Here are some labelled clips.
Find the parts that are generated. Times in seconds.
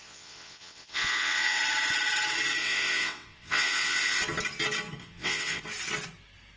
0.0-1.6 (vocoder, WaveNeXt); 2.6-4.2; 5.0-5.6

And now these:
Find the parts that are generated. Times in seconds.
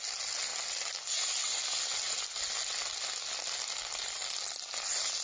none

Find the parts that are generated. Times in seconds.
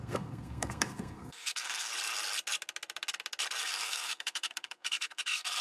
0.0-1.9 (codec, SNAC); 3.6-5.6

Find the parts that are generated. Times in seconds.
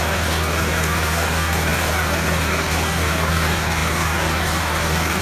0.0-5.2 (codec, DAC)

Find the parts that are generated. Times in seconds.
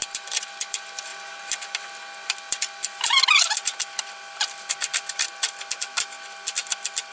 none